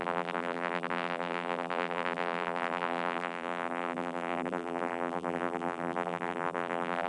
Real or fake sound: fake